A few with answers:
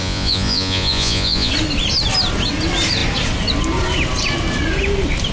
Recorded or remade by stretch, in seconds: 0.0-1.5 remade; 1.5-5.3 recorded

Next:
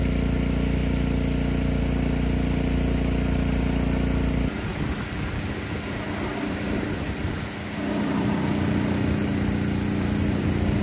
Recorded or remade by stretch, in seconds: 0.0-10.8 recorded